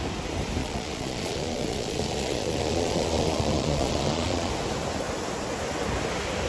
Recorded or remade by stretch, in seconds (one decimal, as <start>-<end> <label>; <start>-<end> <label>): 0.0-0.6 recorded; 0.6-4.5 remade; 4.5-6.5 recorded